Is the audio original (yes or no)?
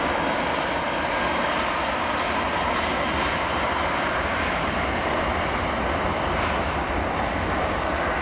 yes